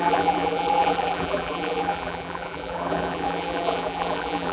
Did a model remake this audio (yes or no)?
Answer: yes